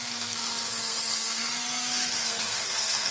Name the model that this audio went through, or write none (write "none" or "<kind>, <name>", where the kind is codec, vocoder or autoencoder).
codec, SNAC